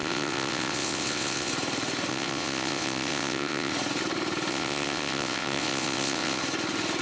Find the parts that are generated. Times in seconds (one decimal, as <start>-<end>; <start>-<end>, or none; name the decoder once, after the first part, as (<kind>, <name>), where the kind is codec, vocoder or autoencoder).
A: 0.0-1.5 (vocoder, WaveNeXt); 2.1-3.7; 4.5-6.4